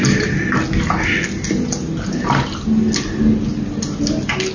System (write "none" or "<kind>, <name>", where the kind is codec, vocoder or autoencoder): none